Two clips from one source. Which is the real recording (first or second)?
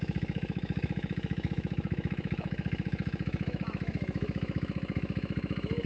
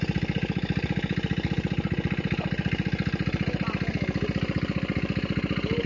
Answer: second